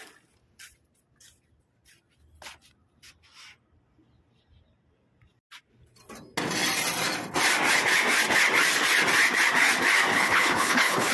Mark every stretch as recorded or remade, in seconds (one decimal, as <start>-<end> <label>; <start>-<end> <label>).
0.0-10.1 recorded; 10.1-11.1 remade

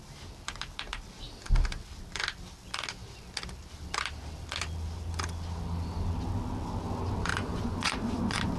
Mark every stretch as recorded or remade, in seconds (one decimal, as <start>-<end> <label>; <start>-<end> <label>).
0.0-7.3 recorded; 7.3-8.6 remade

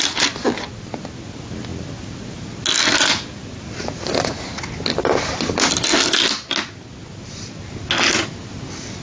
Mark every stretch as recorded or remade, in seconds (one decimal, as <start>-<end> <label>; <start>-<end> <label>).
0.0-9.0 recorded

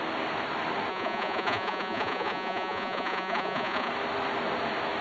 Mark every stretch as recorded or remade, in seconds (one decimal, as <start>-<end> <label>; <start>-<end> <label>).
0.0-0.9 recorded; 0.9-3.9 remade; 3.9-5.0 recorded

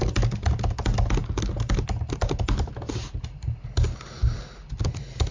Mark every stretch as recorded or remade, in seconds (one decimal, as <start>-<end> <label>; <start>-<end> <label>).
0.0-5.3 recorded

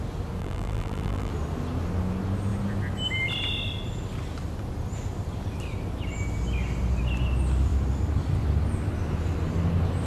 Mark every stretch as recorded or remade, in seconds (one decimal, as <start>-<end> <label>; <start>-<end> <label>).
0.0-0.4 recorded; 0.4-1.3 remade; 1.3-10.1 recorded